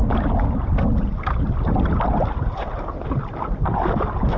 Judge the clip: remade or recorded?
recorded